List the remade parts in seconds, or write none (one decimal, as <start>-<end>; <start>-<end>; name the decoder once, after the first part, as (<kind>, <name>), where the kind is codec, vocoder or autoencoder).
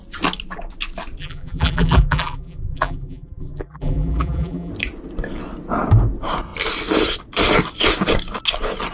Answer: 1.2-4.7 (vocoder, BigVGAN v2)